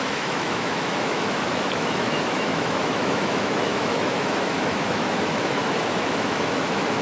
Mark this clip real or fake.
fake